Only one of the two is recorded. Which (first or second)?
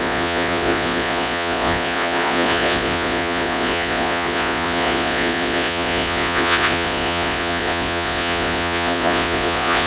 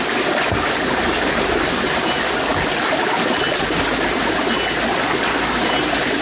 second